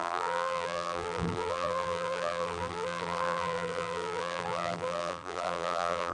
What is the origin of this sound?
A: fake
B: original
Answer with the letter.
A